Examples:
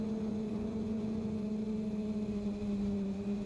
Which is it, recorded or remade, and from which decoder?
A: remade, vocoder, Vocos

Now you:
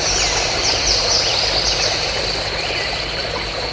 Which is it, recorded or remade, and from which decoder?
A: recorded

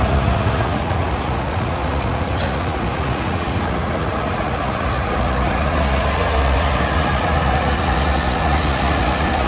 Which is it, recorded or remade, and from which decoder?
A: remade, vocoder, Vocos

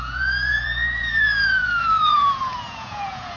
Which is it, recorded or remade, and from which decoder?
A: remade, vocoder, Vocos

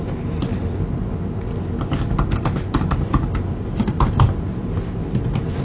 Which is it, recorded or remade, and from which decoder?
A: recorded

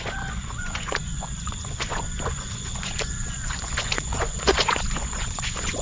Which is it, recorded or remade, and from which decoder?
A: remade, vocoder, Vocos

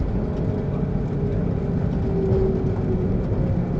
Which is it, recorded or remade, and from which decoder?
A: recorded